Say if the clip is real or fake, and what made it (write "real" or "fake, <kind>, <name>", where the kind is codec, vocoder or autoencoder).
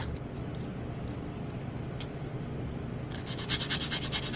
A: real